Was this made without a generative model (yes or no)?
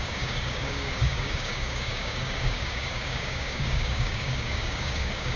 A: no